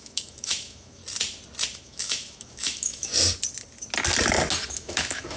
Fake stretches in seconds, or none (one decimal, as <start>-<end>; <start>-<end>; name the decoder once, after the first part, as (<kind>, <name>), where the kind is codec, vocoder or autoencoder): 0.0-1.0 (autoencoder, DAC-VAE); 1.8-3.1; 4.7-5.4